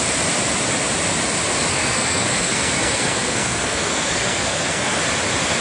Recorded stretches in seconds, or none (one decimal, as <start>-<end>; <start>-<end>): 0.0-1.7; 5.0-5.6